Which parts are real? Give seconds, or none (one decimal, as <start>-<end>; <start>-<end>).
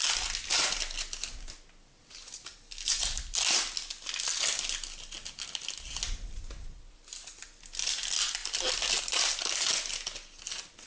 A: 0.0-10.9